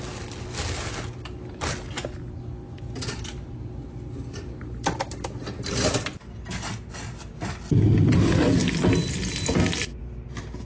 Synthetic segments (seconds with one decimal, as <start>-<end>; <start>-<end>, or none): none